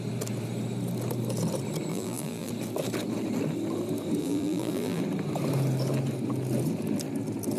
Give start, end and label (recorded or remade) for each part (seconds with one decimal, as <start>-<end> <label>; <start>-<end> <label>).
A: 0.0-1.9 recorded; 1.9-2.5 remade; 2.5-4.2 recorded; 4.2-5.0 remade; 5.0-7.6 recorded